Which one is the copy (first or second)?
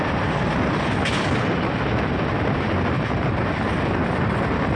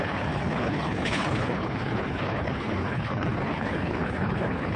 second